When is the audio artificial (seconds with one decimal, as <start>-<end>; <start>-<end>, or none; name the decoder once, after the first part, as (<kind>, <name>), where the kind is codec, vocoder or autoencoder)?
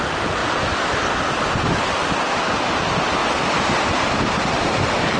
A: none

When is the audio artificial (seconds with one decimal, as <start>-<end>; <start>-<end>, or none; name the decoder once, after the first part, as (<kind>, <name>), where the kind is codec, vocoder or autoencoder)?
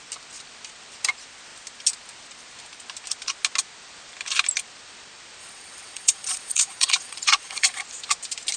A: 5.4-7.8 (vocoder, Vocos)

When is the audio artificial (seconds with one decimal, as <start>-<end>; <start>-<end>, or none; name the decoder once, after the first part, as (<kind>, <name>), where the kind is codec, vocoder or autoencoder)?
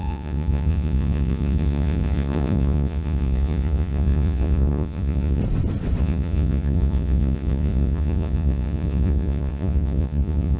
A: 0.0-5.4 (vocoder, Vocos); 6.0-10.6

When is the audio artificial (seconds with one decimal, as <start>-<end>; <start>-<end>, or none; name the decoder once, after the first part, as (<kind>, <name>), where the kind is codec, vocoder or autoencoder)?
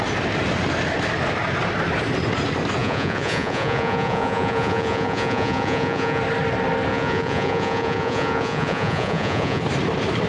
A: 2.8-6.2 (vocoder, Vocos); 6.9-9.6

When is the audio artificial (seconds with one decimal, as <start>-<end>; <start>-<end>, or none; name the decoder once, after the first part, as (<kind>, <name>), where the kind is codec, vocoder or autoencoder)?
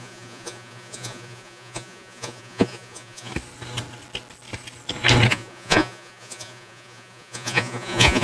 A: 0.0-3.3 (vocoder, Vocos); 5.3-8.2